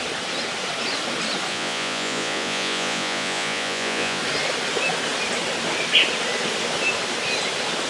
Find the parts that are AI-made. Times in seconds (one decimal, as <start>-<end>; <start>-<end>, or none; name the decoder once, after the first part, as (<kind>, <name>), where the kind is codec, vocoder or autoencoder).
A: 1.5-4.2 (vocoder, Vocos)